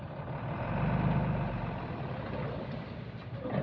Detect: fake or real real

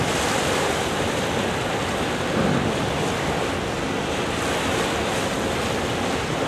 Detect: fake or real real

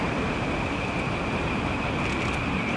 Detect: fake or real real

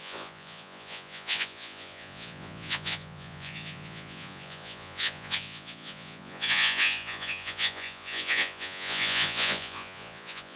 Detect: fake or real fake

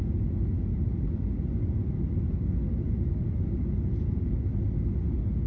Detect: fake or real real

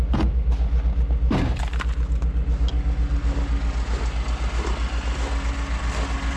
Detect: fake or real real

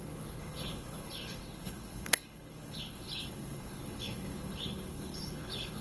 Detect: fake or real fake